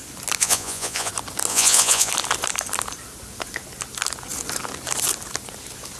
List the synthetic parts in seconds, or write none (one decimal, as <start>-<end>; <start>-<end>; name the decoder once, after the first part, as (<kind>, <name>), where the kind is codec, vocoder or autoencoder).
0.4-1.1 (vocoder, Vocos); 1.5-2.1